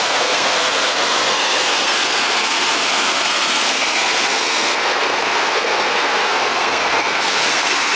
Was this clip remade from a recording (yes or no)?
yes